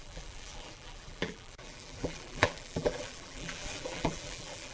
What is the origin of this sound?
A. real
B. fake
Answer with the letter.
B